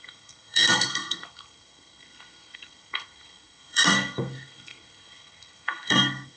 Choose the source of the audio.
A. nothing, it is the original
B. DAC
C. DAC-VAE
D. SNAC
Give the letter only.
D